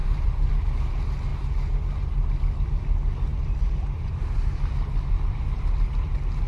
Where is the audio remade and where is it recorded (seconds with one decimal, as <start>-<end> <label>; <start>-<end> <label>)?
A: 0.0-0.5 remade; 0.5-3.3 recorded; 3.3-6.1 remade; 6.1-6.5 recorded